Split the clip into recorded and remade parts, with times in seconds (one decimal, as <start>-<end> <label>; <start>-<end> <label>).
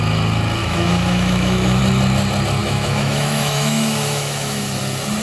0.0-0.6 recorded; 0.6-1.8 remade; 1.8-2.6 recorded; 2.6-4.6 remade; 4.6-5.2 recorded